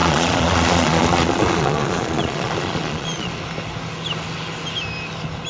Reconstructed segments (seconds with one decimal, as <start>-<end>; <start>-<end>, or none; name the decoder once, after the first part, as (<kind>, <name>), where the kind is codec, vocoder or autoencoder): 0.0-3.3 (vocoder, Vocos)